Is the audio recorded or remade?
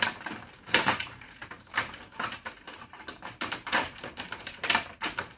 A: remade